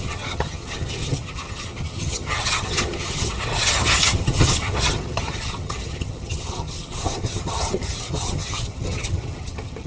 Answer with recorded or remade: remade